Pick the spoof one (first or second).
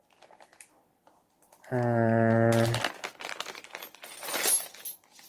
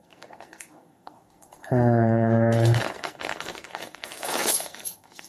second